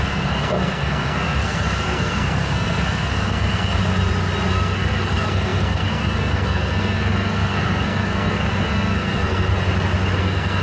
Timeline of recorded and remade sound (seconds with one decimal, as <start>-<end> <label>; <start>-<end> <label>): 0.0-3.8 remade; 3.8-4.5 recorded; 4.5-9.5 remade; 9.5-10.2 recorded; 10.2-10.6 remade